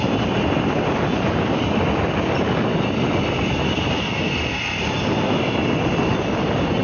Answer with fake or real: real